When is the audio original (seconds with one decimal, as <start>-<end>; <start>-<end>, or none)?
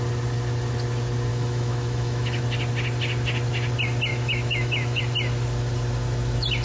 0.0-1.3; 2.4-4.1; 5.0-6.6